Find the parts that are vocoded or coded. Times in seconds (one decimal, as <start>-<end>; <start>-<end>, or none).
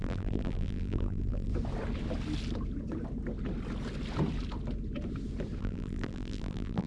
0.0-1.5; 5.6-6.9